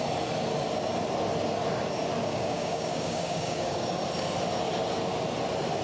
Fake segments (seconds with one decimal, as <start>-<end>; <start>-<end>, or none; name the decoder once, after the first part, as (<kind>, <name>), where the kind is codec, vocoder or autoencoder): 2.2-3.9 (codec, DAC)